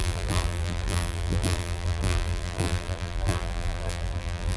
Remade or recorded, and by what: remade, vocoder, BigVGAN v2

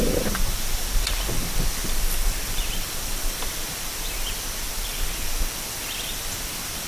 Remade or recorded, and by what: remade, vocoder, BigVGAN v2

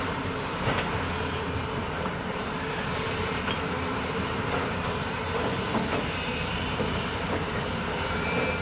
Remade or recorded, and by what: remade, vocoder, BigVGAN v2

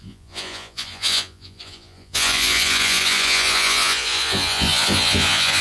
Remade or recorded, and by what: remade, vocoder, Vocos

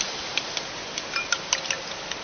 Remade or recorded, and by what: recorded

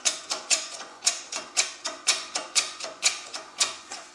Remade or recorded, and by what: remade, vocoder, Vocos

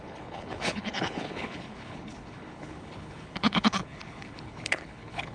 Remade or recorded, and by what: remade, codec, HILCodec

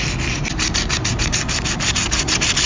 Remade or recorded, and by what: recorded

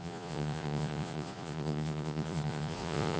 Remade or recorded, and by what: remade, vocoder, Vocos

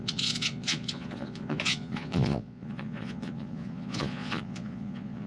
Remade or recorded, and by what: remade, vocoder, Vocos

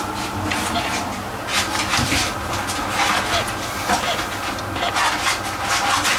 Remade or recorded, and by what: recorded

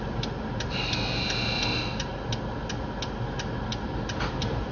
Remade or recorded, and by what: recorded